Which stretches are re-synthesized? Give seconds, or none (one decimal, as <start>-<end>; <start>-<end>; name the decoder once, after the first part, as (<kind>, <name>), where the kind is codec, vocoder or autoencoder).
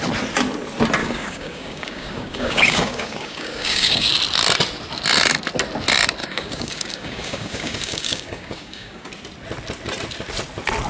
1.0-4.1 (codec, DAC); 6.2-9.1